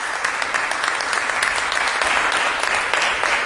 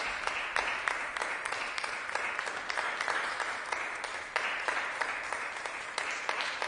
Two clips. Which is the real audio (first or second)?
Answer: first